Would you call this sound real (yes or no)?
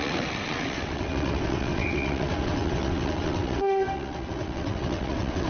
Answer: no